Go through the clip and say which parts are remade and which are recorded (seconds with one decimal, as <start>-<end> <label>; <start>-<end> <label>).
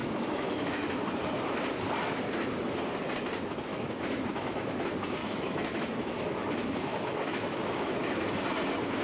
0.0-1.2 remade; 1.2-3.7 recorded; 3.7-4.8 remade; 4.8-5.2 recorded; 5.2-8.3 remade; 8.3-9.0 recorded